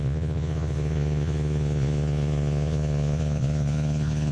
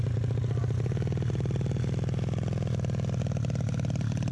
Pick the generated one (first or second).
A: first